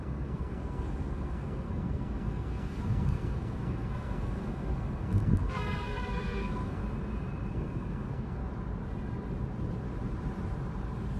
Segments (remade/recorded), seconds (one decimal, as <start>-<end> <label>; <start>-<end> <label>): 0.0-6.8 remade; 6.8-7.5 recorded; 7.5-8.4 remade; 8.4-11.2 recorded